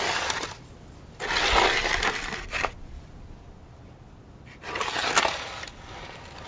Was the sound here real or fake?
real